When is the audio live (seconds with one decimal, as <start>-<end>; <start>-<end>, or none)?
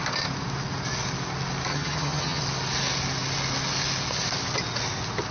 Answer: 0.0-1.7; 2.4-5.3